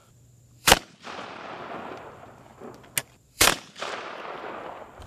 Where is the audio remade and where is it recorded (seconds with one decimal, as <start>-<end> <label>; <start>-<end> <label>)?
0.0-0.7 remade; 0.7-3.0 recorded; 3.0-3.9 remade; 3.9-5.1 recorded